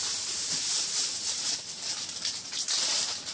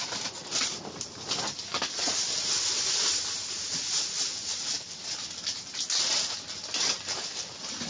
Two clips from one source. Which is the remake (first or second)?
first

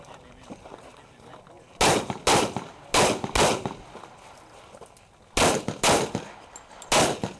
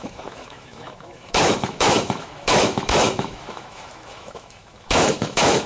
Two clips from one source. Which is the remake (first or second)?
second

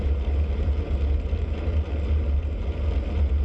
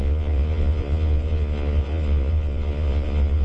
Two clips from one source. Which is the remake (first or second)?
second